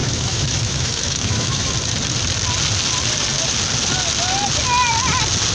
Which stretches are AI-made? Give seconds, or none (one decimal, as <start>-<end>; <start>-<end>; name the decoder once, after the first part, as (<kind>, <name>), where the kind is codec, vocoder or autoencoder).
0.0-1.7 (autoencoder, DAC-VAE)

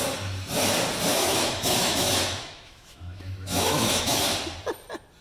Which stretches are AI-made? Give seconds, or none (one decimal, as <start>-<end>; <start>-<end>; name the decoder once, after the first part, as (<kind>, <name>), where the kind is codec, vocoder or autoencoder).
1.1-4.2 (autoencoder, DAC-VAE)